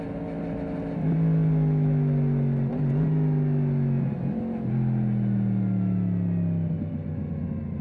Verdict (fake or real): real